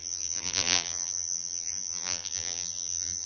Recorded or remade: remade